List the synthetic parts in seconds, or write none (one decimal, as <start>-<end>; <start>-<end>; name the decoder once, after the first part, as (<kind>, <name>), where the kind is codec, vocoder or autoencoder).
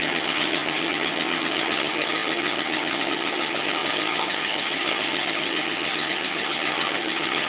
0.0-7.5 (vocoder, HiFi-GAN)